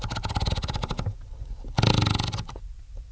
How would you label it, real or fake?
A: real